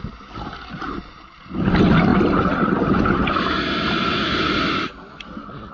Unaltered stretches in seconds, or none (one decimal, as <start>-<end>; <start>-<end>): 0.0-5.7